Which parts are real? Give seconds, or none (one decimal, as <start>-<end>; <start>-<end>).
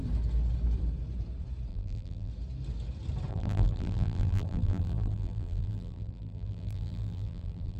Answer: 0.0-1.7; 2.3-3.3